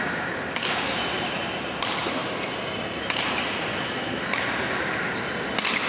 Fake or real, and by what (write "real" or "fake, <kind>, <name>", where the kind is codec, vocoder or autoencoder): real